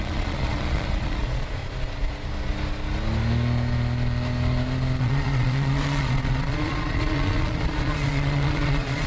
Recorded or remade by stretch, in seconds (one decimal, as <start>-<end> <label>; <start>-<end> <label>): 0.0-1.6 remade; 1.6-5.0 recorded; 5.0-9.1 remade